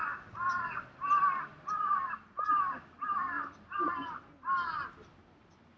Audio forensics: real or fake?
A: real